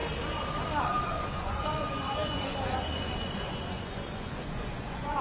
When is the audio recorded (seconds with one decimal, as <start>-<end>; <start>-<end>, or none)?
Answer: 0.0-0.8